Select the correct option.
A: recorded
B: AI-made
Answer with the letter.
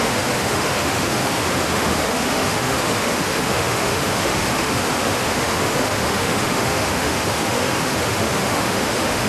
B